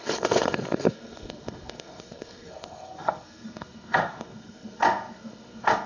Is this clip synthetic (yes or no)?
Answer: yes